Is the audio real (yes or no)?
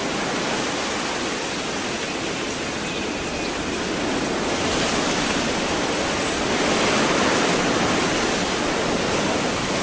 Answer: yes